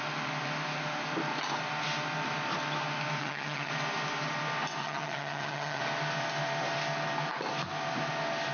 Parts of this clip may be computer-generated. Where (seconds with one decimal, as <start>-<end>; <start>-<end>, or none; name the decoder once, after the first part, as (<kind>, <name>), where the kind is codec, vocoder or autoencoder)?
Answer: 3.2-3.7 (vocoder, HiFi-GAN); 4.8-5.8